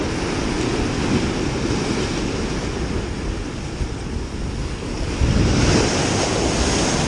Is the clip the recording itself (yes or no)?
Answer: yes